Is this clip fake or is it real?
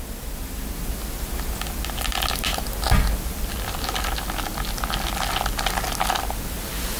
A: real